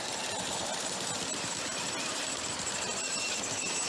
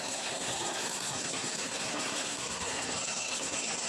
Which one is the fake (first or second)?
second